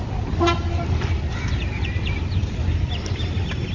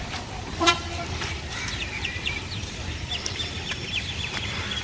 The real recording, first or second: first